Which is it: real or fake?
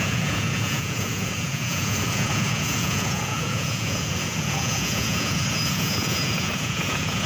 fake